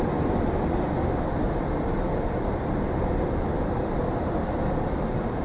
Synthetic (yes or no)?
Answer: no